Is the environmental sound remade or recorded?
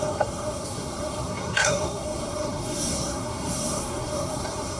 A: remade